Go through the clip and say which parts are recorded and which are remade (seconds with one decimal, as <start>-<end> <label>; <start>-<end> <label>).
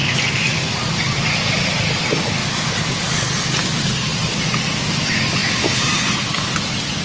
0.0-4.1 recorded; 4.1-4.7 remade; 4.7-5.4 recorded; 5.4-6.1 remade; 6.1-7.0 recorded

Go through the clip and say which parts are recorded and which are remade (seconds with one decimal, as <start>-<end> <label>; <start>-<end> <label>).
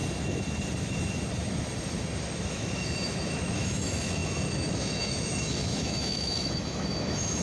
0.0-2.5 recorded; 2.5-7.4 remade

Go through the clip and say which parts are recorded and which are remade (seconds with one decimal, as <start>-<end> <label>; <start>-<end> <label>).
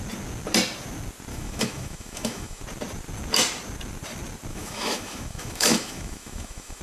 0.0-1.3 recorded; 1.3-2.6 remade; 2.6-4.5 recorded; 4.5-6.8 remade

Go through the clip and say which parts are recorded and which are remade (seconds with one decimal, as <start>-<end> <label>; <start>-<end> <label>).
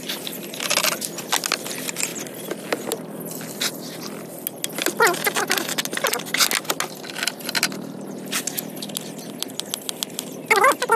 0.0-11.0 recorded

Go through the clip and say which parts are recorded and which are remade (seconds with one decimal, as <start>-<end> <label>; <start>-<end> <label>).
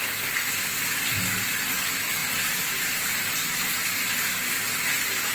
0.0-5.3 recorded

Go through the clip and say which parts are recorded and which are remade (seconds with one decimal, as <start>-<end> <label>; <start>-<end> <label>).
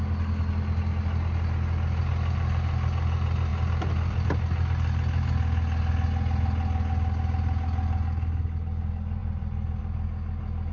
0.0-3.5 recorded; 3.5-4.4 remade; 4.4-9.2 recorded; 9.2-9.8 remade; 9.8-10.7 recorded